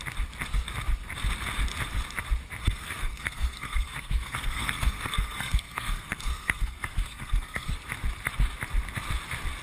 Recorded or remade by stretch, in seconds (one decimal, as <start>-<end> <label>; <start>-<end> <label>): 0.0-2.6 recorded; 2.6-7.7 remade; 7.7-9.6 recorded

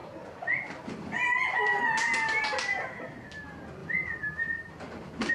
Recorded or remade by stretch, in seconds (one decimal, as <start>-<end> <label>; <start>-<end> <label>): 0.0-5.3 recorded

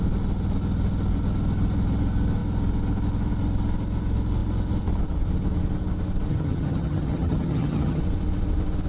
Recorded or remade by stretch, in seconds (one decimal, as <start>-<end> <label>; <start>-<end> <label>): 0.0-6.3 recorded; 6.3-8.0 remade; 8.0-8.9 recorded

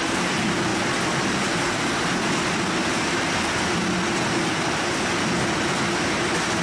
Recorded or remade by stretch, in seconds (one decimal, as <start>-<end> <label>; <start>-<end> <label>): 0.0-6.6 recorded